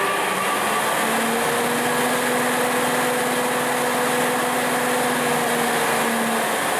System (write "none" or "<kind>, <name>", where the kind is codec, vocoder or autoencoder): none